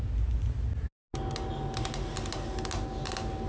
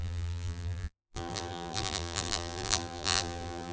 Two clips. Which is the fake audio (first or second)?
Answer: second